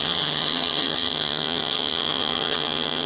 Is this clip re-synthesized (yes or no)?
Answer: yes